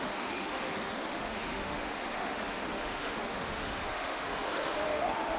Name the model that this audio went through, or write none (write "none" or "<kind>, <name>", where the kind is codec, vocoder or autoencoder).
autoencoder, DAC-VAE